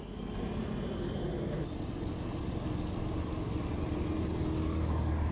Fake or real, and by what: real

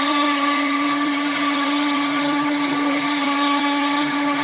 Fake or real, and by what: fake, vocoder, HiFi-GAN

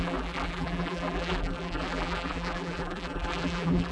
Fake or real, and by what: fake, vocoder, BigVGAN v2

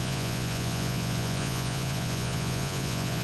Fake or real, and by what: fake, vocoder, Vocos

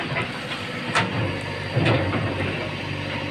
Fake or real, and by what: real